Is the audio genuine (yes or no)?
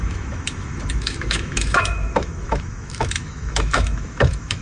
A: no